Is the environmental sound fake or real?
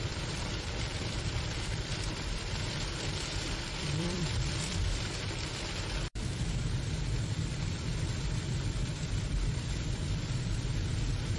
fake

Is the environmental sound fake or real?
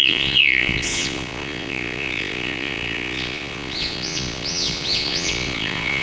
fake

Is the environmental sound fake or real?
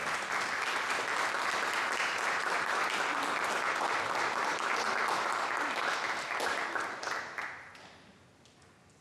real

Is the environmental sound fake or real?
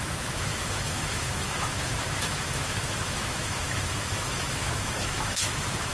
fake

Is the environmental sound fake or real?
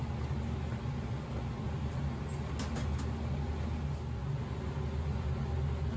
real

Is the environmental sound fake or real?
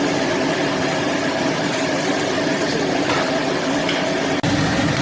real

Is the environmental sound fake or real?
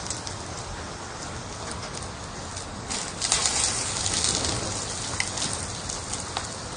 real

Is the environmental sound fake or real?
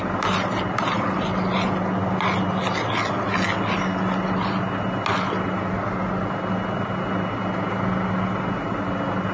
real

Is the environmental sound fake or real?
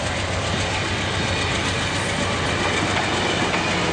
real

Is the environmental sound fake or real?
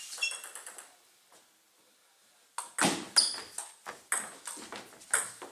real